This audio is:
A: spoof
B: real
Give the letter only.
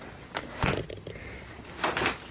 B